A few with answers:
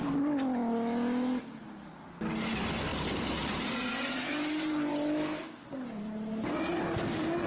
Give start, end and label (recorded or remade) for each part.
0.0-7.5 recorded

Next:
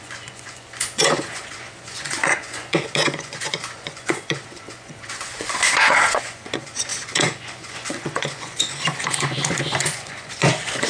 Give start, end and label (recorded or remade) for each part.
0.0-10.9 remade

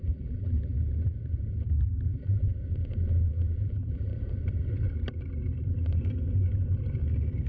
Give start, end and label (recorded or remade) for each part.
0.0-0.7 remade; 0.7-1.8 recorded; 1.8-2.5 remade; 2.5-3.3 recorded; 3.3-4.1 remade; 4.1-7.5 recorded

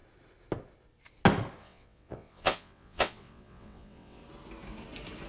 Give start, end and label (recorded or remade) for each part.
0.0-1.6 recorded; 1.6-4.2 remade; 4.2-5.3 recorded

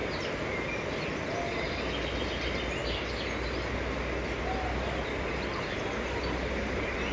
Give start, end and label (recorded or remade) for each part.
0.0-0.9 remade; 0.9-7.1 recorded